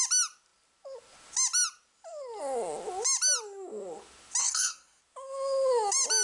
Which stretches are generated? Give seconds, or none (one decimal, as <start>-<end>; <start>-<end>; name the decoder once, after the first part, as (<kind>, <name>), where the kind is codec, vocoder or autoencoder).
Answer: 4.4-5.0 (codec, SNAC)